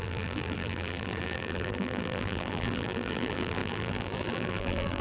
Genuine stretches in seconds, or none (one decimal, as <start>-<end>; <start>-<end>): none

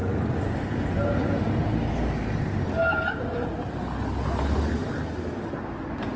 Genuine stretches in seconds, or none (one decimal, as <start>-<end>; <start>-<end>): 0.0-6.2

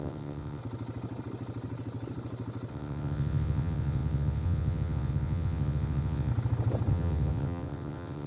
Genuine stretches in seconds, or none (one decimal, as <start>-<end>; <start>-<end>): 0.6-2.7; 6.3-6.9

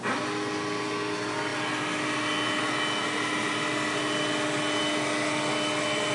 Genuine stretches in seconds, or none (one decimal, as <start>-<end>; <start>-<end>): 0.0-6.1

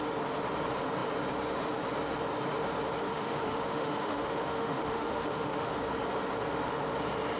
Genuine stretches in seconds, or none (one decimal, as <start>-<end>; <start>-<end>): 0.0-3.1; 5.7-7.4

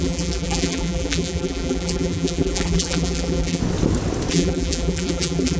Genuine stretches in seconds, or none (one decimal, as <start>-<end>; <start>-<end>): 3.6-4.3

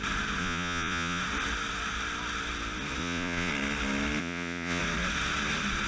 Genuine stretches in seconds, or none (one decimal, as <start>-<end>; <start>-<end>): 0.0-0.4; 1.2-3.0; 3.5-4.2; 4.8-5.9

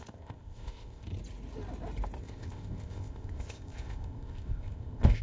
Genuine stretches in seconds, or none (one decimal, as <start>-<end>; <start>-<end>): 1.1-2.2